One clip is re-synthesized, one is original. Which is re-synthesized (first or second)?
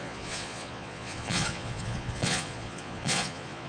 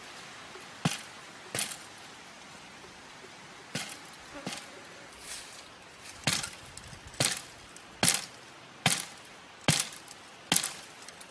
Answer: first